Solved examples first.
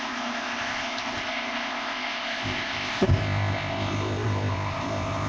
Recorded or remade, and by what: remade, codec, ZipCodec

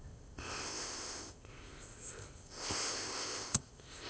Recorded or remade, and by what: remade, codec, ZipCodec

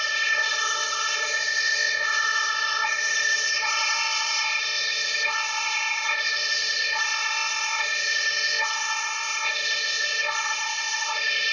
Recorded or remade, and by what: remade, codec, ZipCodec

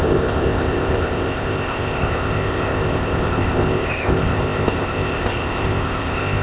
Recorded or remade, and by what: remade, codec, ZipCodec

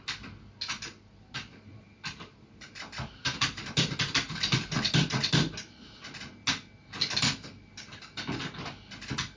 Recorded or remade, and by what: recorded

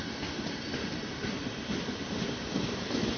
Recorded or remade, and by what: recorded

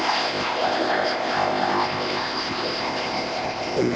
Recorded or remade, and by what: remade, codec, ZipCodec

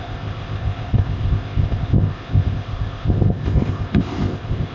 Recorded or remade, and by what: remade, codec, ZipCodec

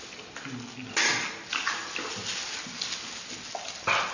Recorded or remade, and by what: recorded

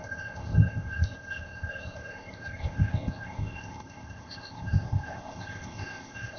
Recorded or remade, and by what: remade, codec, ZipCodec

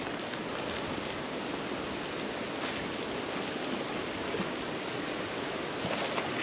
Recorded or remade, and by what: recorded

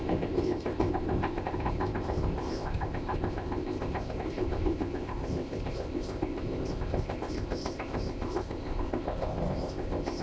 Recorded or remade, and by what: remade, codec, ZipCodec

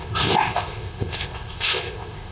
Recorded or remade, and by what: remade, codec, ZipCodec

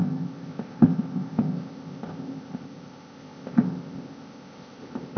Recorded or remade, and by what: remade, codec, ZipCodec